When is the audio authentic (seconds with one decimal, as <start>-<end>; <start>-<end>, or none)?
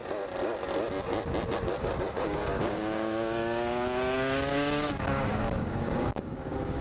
0.0-1.8